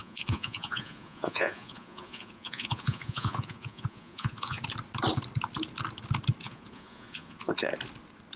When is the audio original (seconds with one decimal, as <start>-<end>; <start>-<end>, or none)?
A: 4.6-6.4; 7.5-8.4